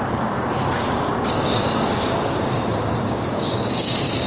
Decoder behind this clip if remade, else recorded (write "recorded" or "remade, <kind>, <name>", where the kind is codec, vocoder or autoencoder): remade, codec, DAC